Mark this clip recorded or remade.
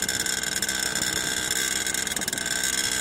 recorded